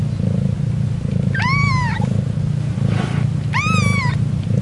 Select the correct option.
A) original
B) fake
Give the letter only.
A